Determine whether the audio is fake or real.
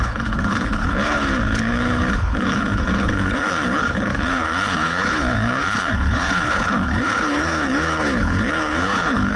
fake